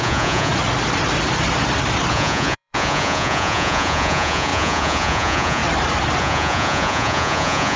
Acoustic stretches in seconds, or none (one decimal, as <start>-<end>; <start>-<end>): 0.5-2.1; 5.6-6.2